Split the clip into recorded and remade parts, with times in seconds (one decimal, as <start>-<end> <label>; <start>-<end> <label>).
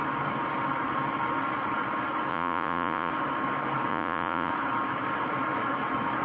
0.0-2.3 recorded; 2.3-3.1 remade; 3.1-3.9 recorded; 3.9-4.5 remade; 4.5-6.2 recorded